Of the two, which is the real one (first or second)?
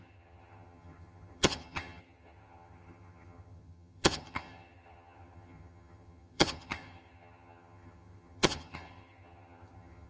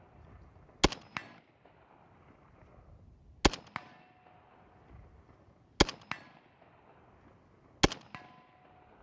second